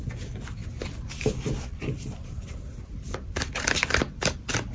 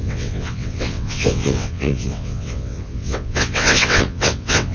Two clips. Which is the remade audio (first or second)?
second